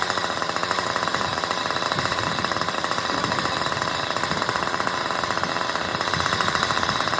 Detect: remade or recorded remade